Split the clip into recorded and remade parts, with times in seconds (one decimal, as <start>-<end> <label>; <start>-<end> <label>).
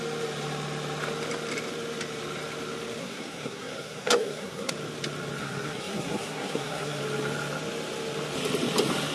0.0-3.0 recorded; 3.0-4.7 remade; 4.7-5.4 recorded; 5.4-7.0 remade; 7.0-9.1 recorded